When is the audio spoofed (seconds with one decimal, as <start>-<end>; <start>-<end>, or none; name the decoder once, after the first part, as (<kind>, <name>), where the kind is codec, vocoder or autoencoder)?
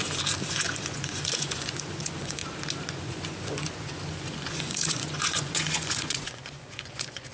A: 0.5-2.4 (vocoder, Vocos); 2.9-7.3